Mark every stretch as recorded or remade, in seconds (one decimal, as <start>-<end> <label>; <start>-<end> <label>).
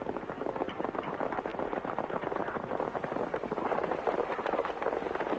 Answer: 0.0-1.5 recorded; 1.5-4.7 remade; 4.7-5.4 recorded